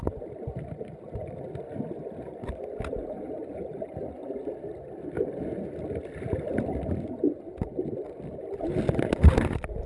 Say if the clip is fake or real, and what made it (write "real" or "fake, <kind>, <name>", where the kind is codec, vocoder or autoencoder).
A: real